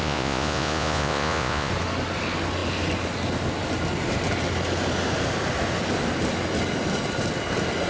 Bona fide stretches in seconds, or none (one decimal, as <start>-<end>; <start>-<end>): 1.7-7.9